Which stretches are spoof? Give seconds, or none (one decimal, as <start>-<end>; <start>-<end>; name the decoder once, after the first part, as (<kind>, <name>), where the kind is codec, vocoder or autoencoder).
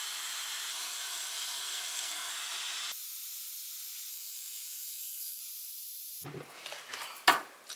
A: 0.7-2.3 (codec, SNAC); 4.1-5.4